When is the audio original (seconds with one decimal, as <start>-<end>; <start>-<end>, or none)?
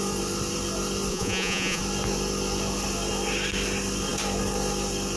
0.0-1.1; 1.8-5.2